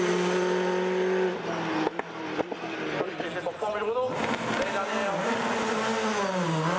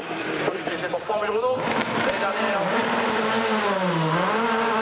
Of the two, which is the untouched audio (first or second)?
first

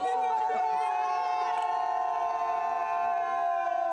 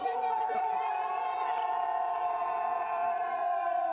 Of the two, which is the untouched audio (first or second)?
first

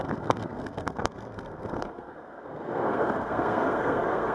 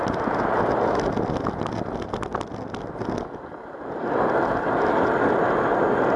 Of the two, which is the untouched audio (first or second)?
second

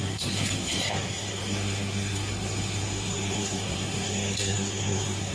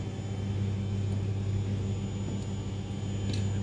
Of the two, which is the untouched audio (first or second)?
second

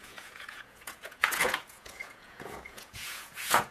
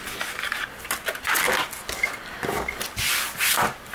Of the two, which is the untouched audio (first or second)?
second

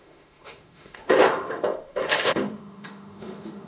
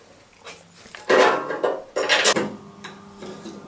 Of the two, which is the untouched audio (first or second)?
second